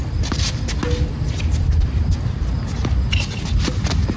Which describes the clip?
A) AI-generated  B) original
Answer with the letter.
B